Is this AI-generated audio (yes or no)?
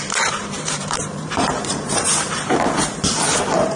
yes